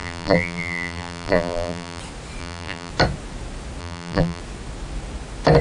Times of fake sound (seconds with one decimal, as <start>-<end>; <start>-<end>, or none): 0.0-2.0; 2.4-2.9; 3.8-4.4